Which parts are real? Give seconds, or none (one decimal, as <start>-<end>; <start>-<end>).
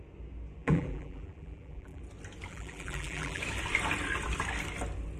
0.0-0.6; 2.0-2.5; 3.4-5.2